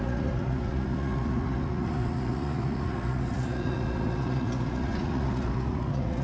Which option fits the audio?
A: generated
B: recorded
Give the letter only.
A